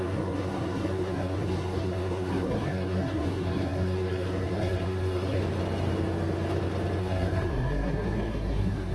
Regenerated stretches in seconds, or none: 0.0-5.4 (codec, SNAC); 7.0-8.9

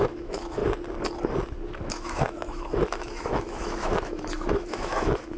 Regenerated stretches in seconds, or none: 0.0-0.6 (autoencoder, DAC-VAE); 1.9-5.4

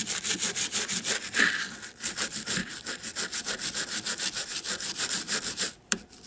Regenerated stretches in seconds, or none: 0.0-6.3 (vocoder, BigVGAN v2)

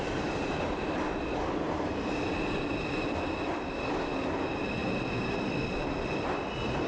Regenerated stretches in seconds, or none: none

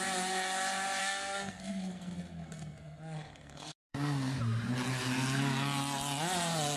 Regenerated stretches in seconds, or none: 1.0-4.4 (codec, SNAC)

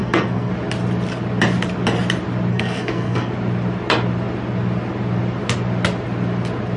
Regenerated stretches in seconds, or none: 0.0-0.5 (codec, SNAC); 2.5-3.3

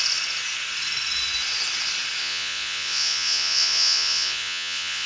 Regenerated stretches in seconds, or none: 2.2-5.1 (vocoder, Vocos)